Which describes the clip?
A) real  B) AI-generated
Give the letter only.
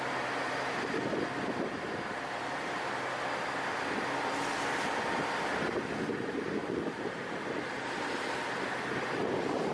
A